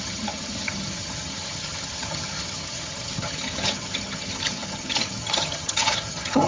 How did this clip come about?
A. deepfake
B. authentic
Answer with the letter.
A